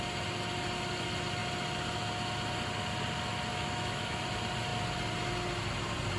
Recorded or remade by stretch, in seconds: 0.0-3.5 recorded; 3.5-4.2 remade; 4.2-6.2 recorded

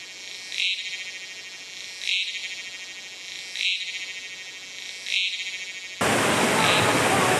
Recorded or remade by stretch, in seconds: 0.0-7.4 recorded

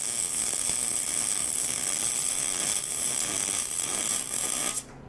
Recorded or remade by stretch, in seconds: 0.0-4.1 remade; 4.1-5.1 recorded

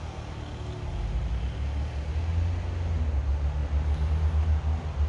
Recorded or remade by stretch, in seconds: 0.0-5.1 recorded

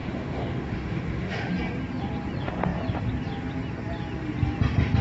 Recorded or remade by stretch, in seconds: 0.0-1.5 remade; 1.5-5.0 recorded

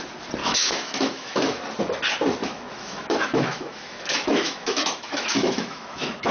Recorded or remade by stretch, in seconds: 0.0-0.4 recorded; 0.4-1.6 remade; 1.6-2.4 recorded; 2.4-6.3 remade